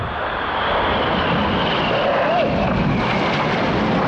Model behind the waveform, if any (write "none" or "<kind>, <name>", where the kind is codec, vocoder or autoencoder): none